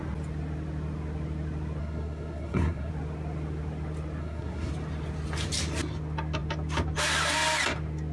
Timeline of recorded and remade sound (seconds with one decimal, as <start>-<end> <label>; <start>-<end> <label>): 0.0-1.8 recorded; 1.8-2.9 remade; 2.9-4.2 recorded; 4.2-4.7 remade; 4.7-8.1 recorded